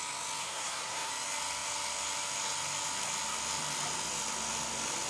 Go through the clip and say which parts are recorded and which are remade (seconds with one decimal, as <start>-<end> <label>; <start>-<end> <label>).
0.0-0.4 recorded; 0.4-1.1 remade; 1.1-5.1 recorded